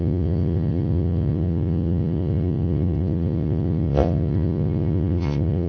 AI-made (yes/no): yes